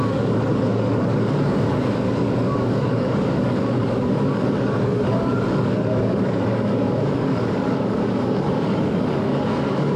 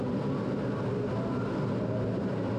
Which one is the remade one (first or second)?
first